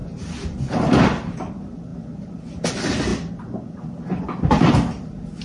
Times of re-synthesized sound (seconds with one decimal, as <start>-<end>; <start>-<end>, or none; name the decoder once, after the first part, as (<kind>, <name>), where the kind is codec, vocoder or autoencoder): none